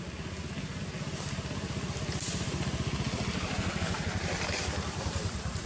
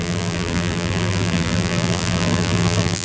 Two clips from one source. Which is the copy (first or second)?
second